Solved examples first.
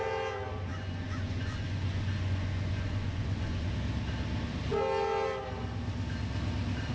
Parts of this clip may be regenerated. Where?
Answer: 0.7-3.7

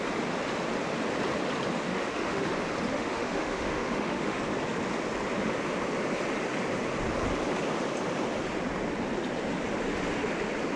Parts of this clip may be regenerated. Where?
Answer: 1.9-2.5; 2.9-4.4

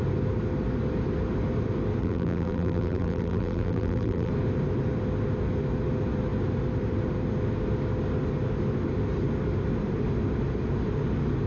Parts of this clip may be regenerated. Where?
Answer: 2.0-4.3

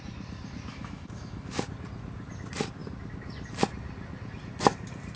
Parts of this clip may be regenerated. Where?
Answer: 0.7-1.6

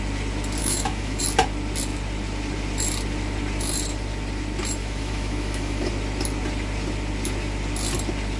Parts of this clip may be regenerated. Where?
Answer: 0.6-1.2; 4.8-5.9